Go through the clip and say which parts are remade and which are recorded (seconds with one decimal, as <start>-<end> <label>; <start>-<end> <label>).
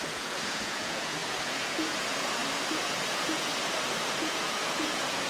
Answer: 0.0-2.4 remade; 2.4-3.1 recorded; 3.1-3.5 remade; 3.5-4.2 recorded; 4.2-5.3 remade